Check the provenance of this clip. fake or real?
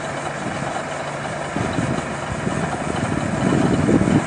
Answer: real